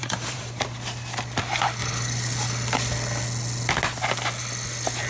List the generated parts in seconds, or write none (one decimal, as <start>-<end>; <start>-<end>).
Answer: 0.0-0.6